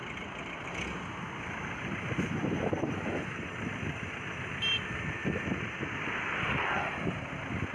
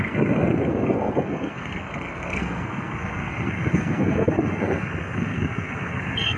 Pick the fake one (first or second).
second